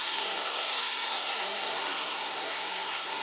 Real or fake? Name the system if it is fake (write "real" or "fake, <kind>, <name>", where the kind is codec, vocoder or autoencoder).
fake, codec, SNAC